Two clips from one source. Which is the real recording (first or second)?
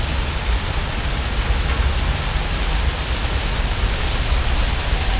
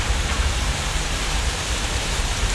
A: first